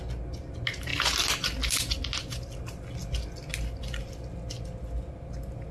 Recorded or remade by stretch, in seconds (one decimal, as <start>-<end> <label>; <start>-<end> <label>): 0.0-5.7 recorded